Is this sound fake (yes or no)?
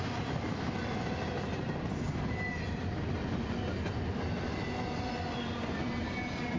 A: no